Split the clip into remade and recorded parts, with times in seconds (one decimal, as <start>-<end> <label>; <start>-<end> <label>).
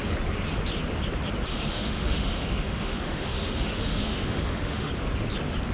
0.0-1.5 recorded; 1.5-4.9 remade; 4.9-5.7 recorded